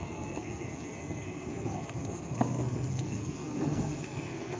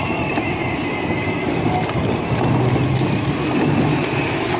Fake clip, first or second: first